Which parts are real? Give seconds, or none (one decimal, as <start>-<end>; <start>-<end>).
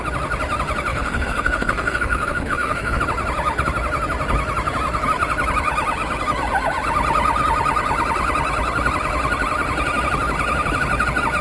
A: 0.0-0.9; 3.0-11.4